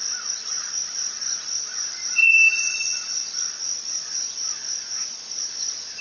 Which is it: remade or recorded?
remade